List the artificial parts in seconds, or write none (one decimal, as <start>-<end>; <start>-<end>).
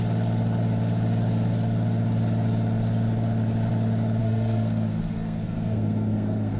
4.2-6.6